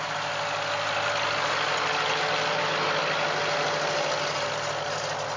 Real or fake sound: real